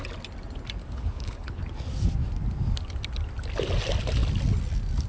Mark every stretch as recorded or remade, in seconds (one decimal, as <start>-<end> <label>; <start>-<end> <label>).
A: 0.0-0.8 recorded; 0.8-1.6 remade; 1.6-5.1 recorded

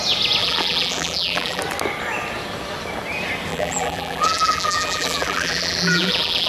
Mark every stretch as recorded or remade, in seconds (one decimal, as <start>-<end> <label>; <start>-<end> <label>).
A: 0.0-0.4 recorded; 0.4-1.6 remade; 1.6-3.5 recorded; 3.5-6.5 remade

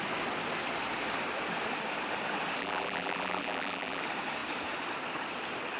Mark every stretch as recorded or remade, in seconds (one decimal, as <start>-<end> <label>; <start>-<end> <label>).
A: 0.0-2.6 recorded; 2.6-4.0 remade; 4.0-5.8 recorded

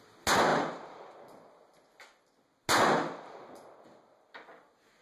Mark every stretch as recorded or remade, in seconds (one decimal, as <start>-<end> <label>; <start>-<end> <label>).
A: 0.0-5.0 recorded

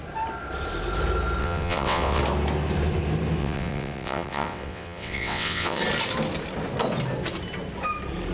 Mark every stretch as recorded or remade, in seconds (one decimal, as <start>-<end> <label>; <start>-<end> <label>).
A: 0.0-1.4 recorded; 1.4-2.2 remade; 2.2-3.4 recorded; 3.4-5.8 remade; 5.8-8.3 recorded

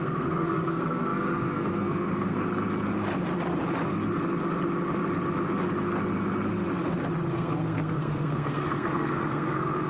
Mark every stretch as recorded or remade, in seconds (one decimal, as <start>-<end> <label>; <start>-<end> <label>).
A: 0.0-2.5 remade; 2.5-7.3 recorded; 7.3-9.9 remade